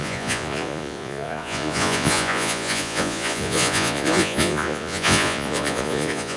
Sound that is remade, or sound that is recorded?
remade